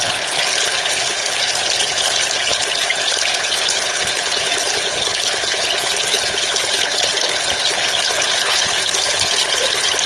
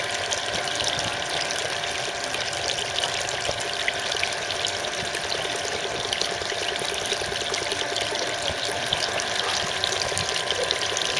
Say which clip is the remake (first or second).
first